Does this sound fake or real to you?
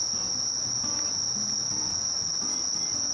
real